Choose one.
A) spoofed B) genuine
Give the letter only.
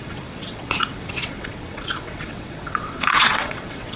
A